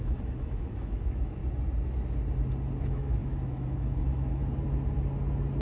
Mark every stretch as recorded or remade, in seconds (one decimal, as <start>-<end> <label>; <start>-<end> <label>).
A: 0.0-1.4 remade; 1.4-2.8 recorded; 2.8-4.4 remade; 4.4-5.6 recorded